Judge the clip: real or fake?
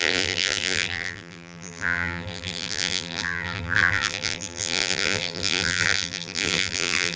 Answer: fake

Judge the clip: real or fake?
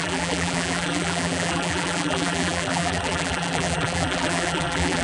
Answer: fake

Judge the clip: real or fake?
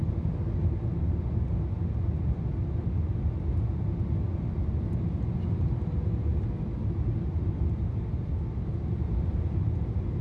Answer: real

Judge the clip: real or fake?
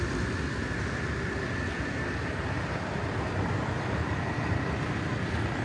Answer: real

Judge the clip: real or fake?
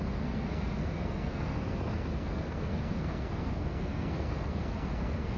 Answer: fake